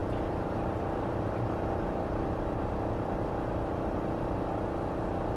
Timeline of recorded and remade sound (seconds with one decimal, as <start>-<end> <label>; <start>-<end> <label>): 0.0-3.2 remade; 3.2-5.4 recorded